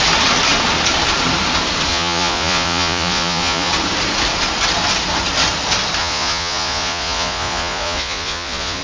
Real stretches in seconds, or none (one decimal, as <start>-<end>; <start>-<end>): 0.0-1.9; 3.7-6.0

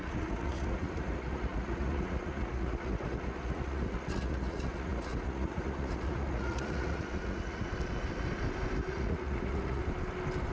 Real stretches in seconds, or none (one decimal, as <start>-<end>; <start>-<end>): 7.7-8.8; 9.8-10.5

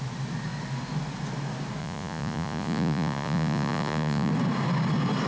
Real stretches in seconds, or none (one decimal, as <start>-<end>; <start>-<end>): 0.0-1.8; 4.3-5.3

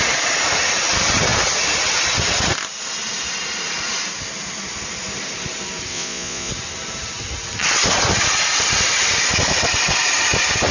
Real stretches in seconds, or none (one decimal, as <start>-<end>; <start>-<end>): 0.0-5.9; 6.5-10.7

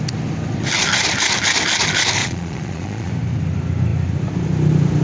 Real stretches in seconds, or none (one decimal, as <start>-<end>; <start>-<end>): 0.0-2.2; 3.1-5.0

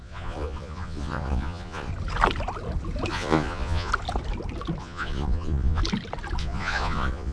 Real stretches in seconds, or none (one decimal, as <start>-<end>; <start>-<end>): 1.9-3.1; 3.9-4.8; 5.8-6.4

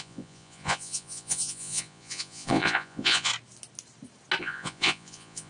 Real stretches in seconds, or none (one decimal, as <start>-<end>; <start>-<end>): 3.3-4.4